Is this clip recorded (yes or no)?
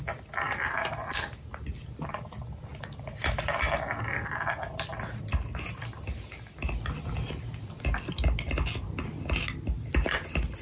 yes